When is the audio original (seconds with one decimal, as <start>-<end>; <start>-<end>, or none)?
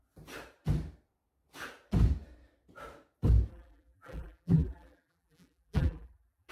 0.0-3.5